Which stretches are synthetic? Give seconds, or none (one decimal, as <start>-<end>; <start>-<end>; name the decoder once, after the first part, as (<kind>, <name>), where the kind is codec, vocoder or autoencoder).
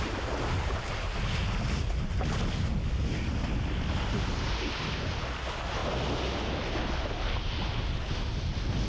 none